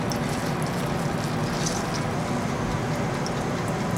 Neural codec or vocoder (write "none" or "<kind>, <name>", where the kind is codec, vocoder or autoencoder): none